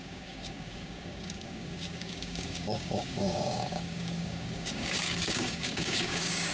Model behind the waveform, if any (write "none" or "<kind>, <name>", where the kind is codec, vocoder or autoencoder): codec, DAC